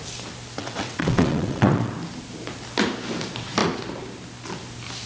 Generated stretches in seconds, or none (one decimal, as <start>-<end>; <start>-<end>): 0.6-1.9